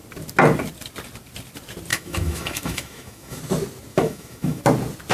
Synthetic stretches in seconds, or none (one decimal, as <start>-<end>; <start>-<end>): 1.9-3.4; 3.9-4.6